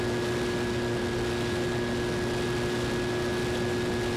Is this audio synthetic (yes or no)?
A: no